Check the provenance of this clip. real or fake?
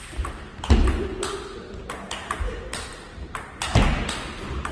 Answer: real